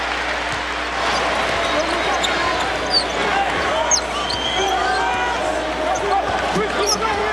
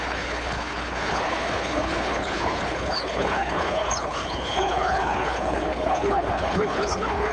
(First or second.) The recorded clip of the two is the first